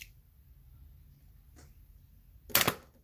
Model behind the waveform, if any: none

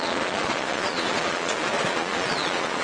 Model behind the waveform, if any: vocoder, Vocos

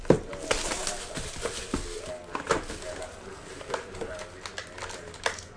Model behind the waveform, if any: none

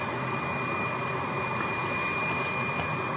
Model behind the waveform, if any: none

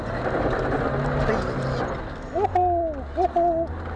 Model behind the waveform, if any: none